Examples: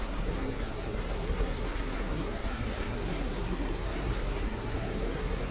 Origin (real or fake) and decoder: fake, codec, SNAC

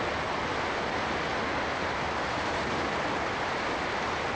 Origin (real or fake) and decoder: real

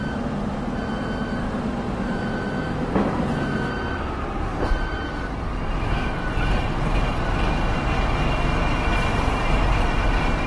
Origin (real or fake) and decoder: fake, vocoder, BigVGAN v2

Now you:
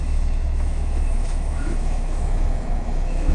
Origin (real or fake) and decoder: fake, autoencoder, DAC-VAE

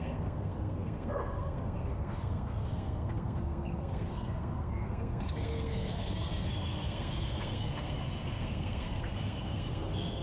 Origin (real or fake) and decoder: fake, codec, SNAC